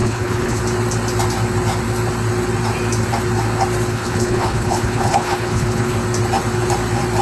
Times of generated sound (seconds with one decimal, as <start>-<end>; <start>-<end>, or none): 0.0-0.6; 3.9-5.9